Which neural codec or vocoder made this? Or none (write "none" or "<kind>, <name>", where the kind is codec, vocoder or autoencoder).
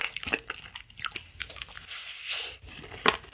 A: none